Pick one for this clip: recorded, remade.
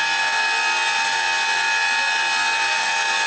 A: recorded